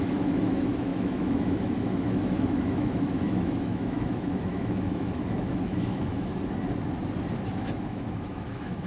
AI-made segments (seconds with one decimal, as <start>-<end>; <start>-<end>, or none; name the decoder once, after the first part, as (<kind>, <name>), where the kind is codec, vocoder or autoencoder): 0.0-6.3 (autoencoder, DAC-VAE); 7.6-8.9